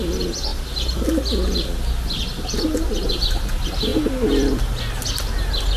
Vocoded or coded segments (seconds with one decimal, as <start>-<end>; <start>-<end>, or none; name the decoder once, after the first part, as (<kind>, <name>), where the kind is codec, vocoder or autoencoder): none